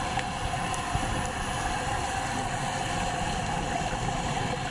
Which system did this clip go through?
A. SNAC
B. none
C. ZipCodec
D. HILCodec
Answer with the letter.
B